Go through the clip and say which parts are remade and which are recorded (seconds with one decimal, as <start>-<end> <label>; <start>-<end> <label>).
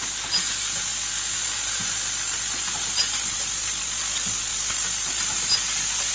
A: 0.0-6.1 recorded